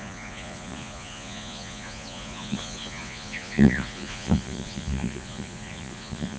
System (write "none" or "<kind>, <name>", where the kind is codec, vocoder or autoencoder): vocoder, Vocos